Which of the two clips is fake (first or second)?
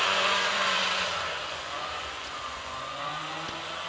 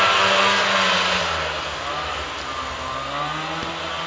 first